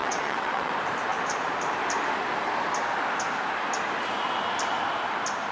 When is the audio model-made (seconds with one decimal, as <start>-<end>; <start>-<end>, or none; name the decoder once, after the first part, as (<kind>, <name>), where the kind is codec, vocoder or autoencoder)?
0.0-0.7 (vocoder, WaveNeXt)

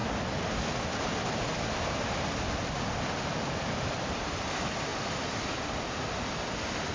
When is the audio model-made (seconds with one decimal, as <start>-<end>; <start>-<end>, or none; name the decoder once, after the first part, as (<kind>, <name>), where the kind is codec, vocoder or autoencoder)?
2.5-6.9 (vocoder, BigVGAN v2)